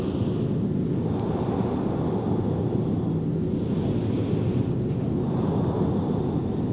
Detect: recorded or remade recorded